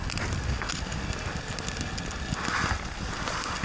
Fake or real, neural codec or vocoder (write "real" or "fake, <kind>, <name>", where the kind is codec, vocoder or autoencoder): real